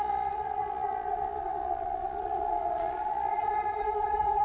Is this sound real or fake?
fake